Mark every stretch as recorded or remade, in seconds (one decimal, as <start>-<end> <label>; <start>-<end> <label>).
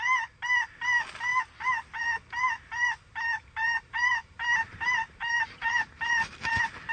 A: 0.0-1.3 recorded; 1.3-2.0 remade; 2.0-2.5 recorded; 2.5-5.9 remade; 5.9-6.9 recorded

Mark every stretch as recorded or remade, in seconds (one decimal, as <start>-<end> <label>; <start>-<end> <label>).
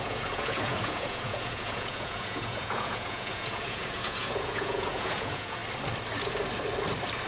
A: 0.0-5.6 remade; 5.6-7.3 recorded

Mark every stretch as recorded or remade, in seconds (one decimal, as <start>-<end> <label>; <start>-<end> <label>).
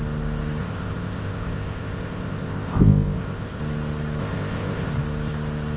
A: 0.0-0.6 recorded; 0.6-3.6 remade; 3.6-4.2 recorded; 4.2-4.9 remade; 4.9-5.8 recorded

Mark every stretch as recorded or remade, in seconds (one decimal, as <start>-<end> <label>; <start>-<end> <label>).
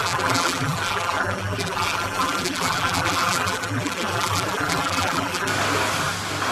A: 0.0-5.5 remade; 5.5-6.5 recorded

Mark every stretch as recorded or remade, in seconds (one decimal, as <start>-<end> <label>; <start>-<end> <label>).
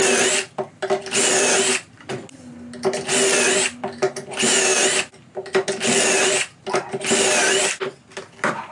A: 0.0-8.7 recorded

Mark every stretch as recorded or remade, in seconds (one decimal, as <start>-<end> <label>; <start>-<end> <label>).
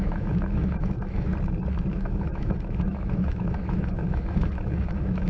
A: 0.0-1.3 remade; 1.3-1.9 recorded; 1.9-5.3 remade